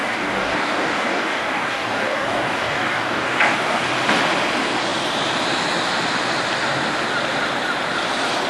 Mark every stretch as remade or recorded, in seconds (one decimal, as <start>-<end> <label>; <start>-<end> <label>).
0.0-3.8 remade; 3.8-8.5 recorded